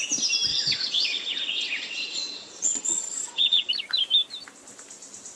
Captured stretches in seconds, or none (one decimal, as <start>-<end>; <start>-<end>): 0.0-0.5; 3.7-5.4